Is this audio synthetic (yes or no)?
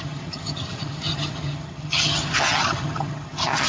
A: yes